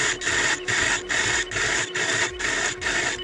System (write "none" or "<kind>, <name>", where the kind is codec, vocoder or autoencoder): none